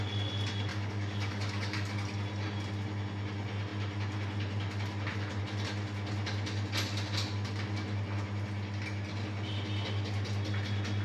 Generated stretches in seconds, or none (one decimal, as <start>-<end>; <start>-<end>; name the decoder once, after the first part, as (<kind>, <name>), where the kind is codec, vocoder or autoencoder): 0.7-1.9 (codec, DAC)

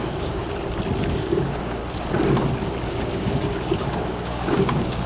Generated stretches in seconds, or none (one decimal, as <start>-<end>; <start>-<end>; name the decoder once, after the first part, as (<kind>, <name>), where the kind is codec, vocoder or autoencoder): 0.0-0.4 (codec, DAC); 1.0-1.8; 2.9-5.1

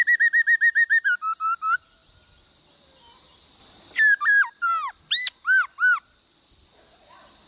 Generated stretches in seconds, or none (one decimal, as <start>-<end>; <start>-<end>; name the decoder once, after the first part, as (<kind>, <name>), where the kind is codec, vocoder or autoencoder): none

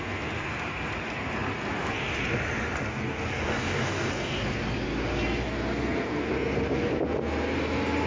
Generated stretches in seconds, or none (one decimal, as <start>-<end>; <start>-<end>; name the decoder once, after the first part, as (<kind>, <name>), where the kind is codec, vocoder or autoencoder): 3.3-4.1 (codec, DAC)

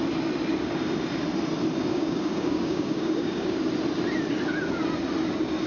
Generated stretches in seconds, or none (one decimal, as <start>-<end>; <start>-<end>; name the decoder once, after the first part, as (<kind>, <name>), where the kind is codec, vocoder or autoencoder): 1.9-3.6 (codec, DAC)